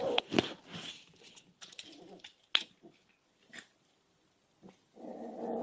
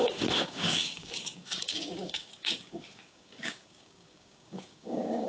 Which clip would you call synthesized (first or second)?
second